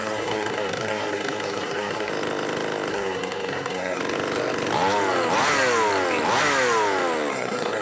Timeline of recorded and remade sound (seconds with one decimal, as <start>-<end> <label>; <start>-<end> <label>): 0.0-2.1 remade; 2.1-2.9 recorded; 2.9-4.0 remade; 4.0-7.3 recorded; 7.3-7.8 remade